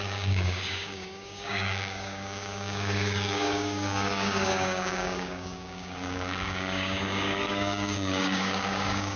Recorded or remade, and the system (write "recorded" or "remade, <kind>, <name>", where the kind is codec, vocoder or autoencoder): remade, codec, DAC